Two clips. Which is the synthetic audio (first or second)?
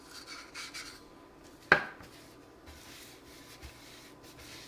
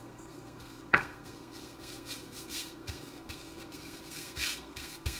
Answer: second